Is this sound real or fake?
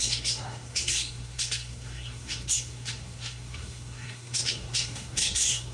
fake